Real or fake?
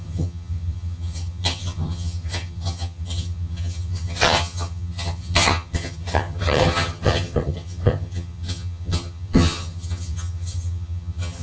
fake